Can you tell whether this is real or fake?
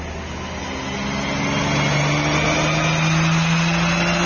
real